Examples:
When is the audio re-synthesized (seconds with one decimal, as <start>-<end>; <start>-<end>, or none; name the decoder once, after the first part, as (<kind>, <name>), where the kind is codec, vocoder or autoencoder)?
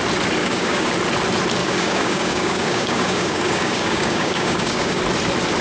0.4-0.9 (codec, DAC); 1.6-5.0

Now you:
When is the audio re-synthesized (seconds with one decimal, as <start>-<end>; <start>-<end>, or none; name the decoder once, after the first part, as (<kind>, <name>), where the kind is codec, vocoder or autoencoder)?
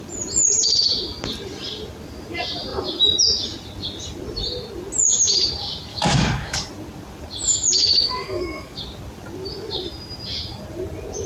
5.9-6.7 (codec, DAC); 7.8-8.8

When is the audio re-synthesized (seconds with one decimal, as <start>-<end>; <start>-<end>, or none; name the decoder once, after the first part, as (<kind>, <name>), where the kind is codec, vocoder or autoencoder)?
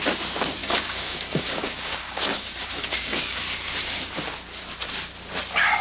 0.6-3.4 (codec, DAC)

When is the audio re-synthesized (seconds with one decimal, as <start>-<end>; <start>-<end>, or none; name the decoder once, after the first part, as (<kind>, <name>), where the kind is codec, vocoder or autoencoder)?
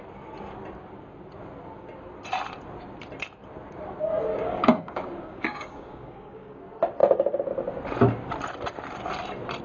4.3-6.6 (codec, DAC)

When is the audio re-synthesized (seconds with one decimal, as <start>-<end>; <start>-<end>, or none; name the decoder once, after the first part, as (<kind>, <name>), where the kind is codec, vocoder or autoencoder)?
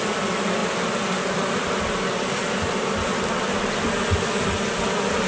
none